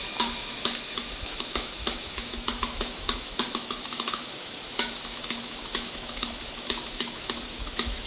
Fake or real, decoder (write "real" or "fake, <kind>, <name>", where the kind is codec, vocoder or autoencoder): fake, autoencoder, DAC-VAE